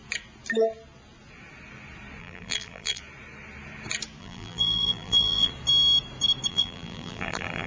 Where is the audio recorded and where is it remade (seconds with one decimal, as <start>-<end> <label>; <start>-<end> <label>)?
0.0-2.2 recorded; 2.2-3.0 remade; 3.0-4.2 recorded; 4.2-5.5 remade; 5.5-6.5 recorded; 6.5-7.7 remade